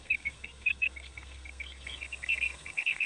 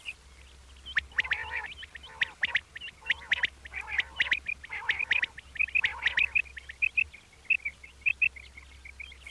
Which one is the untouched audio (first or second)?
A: second